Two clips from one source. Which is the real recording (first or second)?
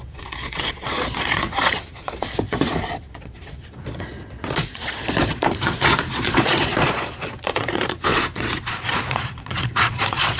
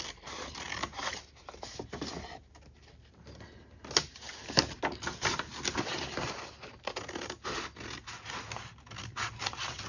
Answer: second